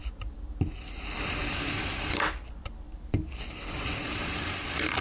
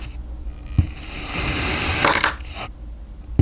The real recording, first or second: second